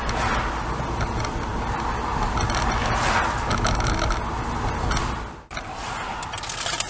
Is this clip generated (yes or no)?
no